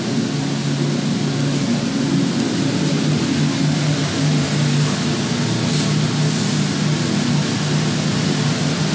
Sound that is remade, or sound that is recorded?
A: recorded